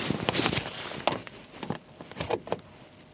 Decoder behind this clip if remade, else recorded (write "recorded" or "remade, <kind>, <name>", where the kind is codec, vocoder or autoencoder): recorded